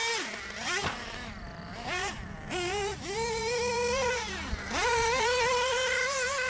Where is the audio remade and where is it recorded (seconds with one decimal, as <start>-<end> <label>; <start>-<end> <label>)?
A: 0.0-6.5 remade